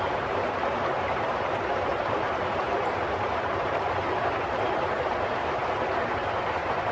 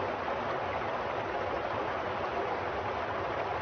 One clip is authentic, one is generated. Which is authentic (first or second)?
second